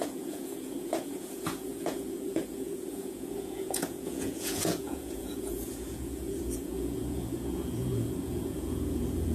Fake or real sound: fake